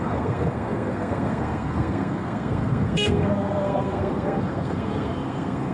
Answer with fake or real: fake